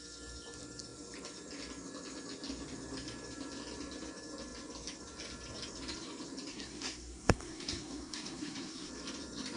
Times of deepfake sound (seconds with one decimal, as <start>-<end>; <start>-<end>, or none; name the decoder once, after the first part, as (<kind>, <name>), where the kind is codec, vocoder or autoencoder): 6.5-8.9 (codec, SNAC)